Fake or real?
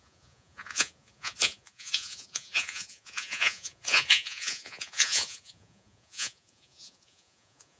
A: fake